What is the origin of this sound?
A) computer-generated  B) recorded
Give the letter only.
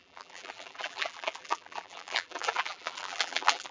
A